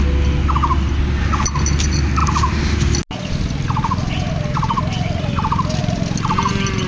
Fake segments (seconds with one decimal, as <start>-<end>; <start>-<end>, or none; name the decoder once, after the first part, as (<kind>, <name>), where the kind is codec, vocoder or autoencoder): none